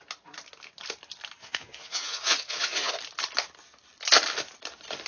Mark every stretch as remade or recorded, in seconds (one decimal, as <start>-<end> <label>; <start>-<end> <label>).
0.0-1.4 recorded; 1.4-2.9 remade; 2.9-5.1 recorded

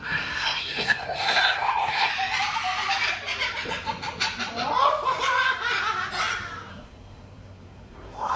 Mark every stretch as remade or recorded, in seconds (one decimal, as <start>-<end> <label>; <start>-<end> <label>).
0.0-2.1 remade; 2.1-6.7 recorded; 6.7-8.4 remade

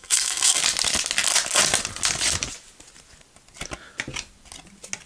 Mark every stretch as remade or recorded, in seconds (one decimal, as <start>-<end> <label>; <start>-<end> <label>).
0.0-0.6 remade; 0.6-5.1 recorded

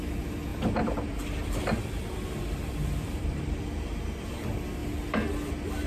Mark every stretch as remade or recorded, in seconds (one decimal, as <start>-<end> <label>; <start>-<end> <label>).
0.0-0.5 recorded; 0.5-3.6 remade; 3.6-5.9 recorded

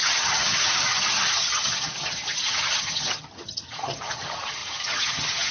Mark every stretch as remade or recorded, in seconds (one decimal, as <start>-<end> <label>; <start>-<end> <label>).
0.0-5.5 remade

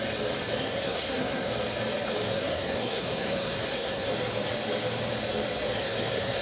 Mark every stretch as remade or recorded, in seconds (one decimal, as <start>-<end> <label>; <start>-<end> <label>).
0.0-0.6 recorded; 0.6-1.5 remade; 1.5-2.3 recorded; 2.3-4.1 remade; 4.1-5.8 recorded; 5.8-6.4 remade

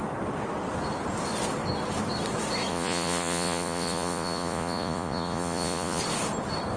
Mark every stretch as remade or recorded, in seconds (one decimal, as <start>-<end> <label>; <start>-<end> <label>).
0.0-2.7 recorded; 2.7-6.0 remade; 6.0-6.8 recorded

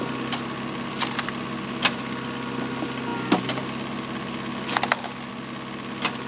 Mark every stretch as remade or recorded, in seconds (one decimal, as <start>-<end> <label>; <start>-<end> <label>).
0.0-6.3 recorded